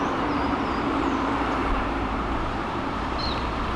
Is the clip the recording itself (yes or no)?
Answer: no